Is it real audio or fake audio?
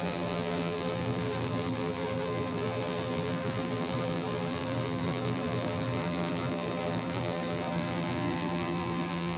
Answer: fake